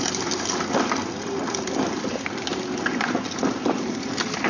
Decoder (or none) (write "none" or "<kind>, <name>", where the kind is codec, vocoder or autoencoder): none